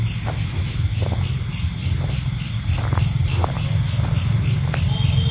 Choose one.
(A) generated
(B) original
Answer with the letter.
B